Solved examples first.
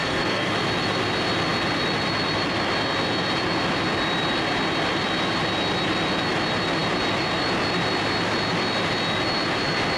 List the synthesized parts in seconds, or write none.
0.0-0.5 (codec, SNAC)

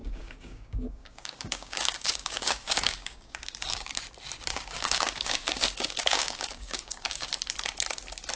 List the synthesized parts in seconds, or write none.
0.0-4.0 (codec, DAC); 4.5-7.3

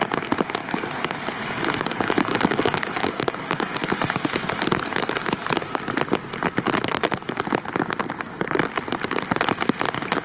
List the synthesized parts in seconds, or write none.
0.6-4.0 (codec, DAC)

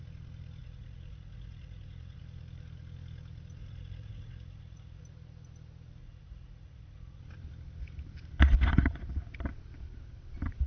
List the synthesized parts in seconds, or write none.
0.6-2.2 (vocoder, Vocos); 3.6-5.0; 6.0-7.2

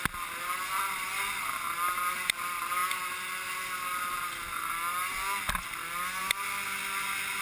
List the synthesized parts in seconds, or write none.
none